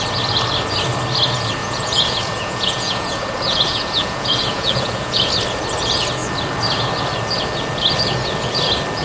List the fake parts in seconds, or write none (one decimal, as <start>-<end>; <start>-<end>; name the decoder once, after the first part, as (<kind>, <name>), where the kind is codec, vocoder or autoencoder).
1.6-5.3 (vocoder, Vocos)